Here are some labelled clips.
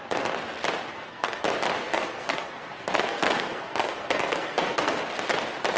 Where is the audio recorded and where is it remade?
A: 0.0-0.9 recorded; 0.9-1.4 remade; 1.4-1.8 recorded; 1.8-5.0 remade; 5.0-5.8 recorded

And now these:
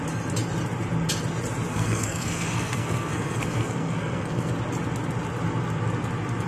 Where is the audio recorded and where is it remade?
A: 0.0-1.7 recorded; 1.7-4.5 remade; 4.5-6.5 recorded

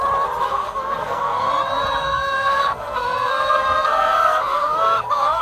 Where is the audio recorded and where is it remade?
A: 0.0-0.5 recorded; 0.5-1.5 remade; 1.5-2.0 recorded; 2.0-5.4 remade

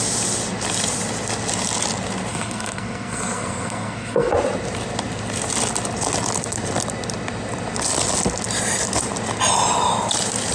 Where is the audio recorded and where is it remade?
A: 0.0-2.3 recorded; 2.3-4.3 remade; 4.3-10.5 recorded

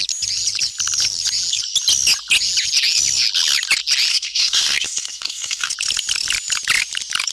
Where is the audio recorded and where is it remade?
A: 0.0-4.1 recorded; 4.1-5.7 remade; 5.7-7.3 recorded

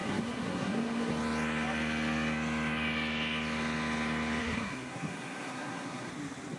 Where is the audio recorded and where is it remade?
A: 0.0-1.1 remade; 1.1-4.4 recorded; 4.4-6.1 remade; 6.1-6.6 recorded

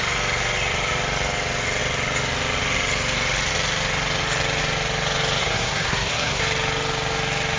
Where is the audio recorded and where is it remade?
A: 0.0-5.4 recorded; 5.4-6.4 remade; 6.4-7.6 recorded